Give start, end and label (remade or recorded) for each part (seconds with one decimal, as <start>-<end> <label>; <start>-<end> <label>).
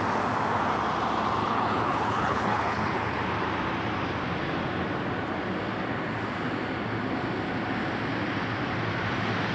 0.0-1.4 recorded; 1.4-3.2 remade; 3.2-9.5 recorded